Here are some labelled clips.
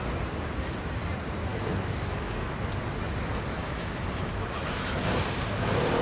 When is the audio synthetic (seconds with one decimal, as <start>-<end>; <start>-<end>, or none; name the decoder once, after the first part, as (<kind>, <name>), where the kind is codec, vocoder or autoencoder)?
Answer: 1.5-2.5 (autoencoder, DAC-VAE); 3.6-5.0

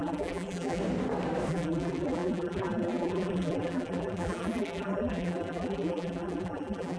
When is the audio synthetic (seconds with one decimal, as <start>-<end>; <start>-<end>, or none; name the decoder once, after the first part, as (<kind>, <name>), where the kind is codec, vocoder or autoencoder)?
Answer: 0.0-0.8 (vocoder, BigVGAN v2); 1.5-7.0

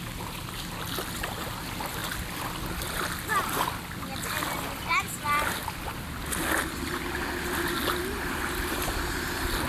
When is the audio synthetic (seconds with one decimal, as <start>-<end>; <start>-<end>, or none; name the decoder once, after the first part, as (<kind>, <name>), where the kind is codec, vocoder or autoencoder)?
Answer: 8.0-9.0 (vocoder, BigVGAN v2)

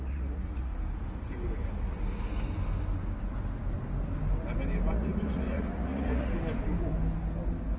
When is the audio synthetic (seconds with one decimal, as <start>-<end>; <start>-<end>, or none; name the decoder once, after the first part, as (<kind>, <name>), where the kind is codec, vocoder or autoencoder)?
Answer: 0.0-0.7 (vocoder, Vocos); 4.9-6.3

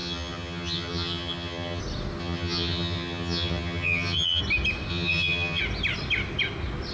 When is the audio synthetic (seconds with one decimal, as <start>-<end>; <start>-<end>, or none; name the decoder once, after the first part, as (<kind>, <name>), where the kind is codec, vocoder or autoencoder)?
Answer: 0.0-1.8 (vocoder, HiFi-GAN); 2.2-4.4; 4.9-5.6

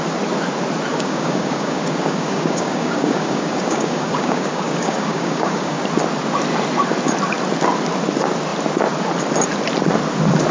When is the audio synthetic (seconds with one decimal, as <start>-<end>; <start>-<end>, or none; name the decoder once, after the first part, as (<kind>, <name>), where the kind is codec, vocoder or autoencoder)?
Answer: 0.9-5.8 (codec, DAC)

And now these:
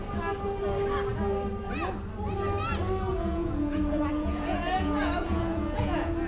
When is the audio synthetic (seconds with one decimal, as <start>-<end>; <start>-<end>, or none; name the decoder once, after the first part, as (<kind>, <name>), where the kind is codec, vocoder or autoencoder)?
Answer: 3.1-6.3 (vocoder, Vocos)

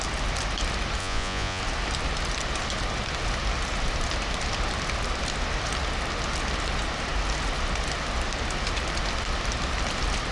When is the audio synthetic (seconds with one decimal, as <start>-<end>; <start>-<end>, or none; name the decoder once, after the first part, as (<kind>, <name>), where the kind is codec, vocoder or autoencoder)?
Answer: 1.0-1.6 (vocoder, Vocos)